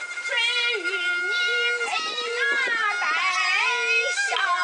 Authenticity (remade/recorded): recorded